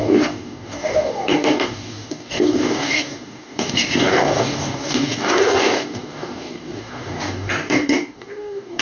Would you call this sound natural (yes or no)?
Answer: no